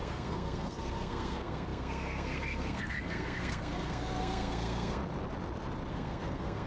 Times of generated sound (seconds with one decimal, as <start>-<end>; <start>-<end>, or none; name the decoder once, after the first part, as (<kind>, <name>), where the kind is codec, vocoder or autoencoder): 0.0-5.0 (codec, SNAC); 5.9-6.7